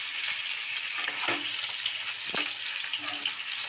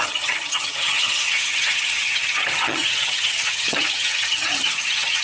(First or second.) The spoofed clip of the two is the second